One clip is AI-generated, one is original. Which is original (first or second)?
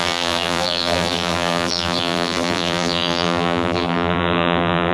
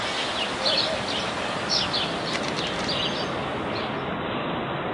second